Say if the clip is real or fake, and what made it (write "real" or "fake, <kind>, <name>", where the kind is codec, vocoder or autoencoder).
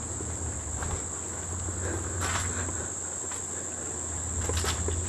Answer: real